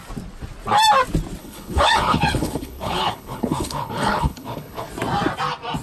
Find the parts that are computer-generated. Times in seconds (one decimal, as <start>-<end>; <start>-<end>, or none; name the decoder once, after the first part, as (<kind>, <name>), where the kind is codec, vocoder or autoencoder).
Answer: 1.4-4.9 (codec, HILCodec)